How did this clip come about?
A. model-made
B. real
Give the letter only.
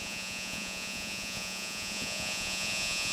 A